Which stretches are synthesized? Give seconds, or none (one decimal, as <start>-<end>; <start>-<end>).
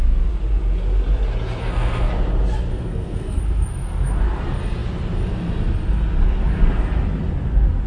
1.6-2.1; 2.7-3.4